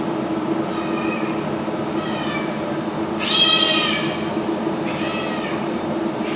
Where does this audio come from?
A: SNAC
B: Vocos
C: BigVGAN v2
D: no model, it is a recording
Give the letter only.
C